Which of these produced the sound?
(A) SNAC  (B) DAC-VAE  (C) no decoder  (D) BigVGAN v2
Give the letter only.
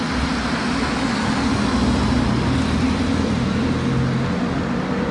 C